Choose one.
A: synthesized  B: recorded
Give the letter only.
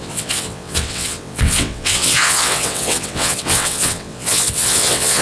A